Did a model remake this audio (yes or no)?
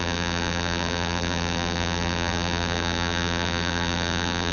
yes